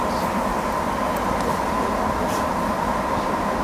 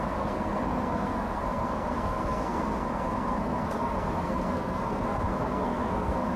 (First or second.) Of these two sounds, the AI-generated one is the second